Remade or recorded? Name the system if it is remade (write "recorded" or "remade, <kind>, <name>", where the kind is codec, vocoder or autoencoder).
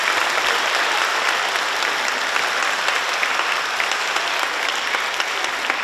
recorded